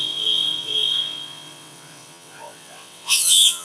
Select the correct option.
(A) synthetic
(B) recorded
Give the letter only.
A